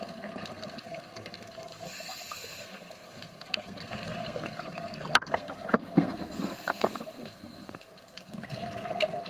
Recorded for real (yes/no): no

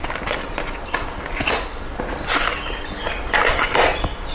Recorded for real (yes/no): yes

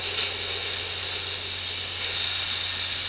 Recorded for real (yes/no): yes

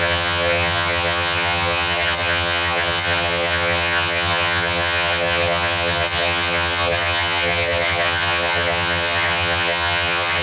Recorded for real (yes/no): no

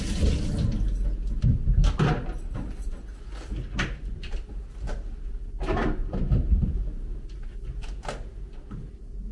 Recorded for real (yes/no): yes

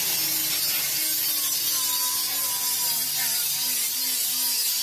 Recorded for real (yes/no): yes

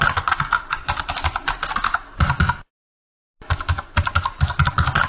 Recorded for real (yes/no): yes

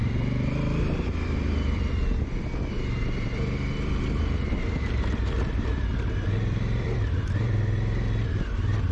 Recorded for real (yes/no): no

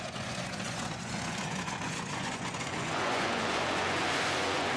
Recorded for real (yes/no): no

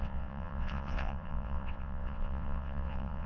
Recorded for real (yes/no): no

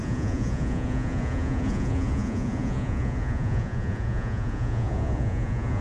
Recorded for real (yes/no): no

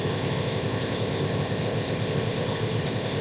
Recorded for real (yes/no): no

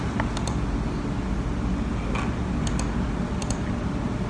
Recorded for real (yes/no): yes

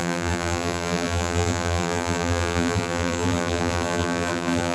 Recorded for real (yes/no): no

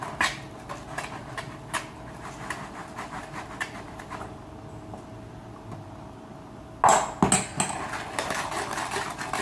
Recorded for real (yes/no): yes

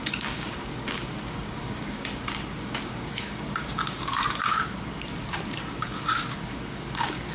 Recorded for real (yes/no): no